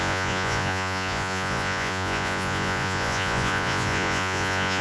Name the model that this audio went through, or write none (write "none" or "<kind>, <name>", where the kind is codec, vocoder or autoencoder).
vocoder, Vocos